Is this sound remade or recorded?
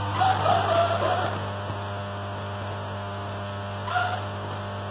recorded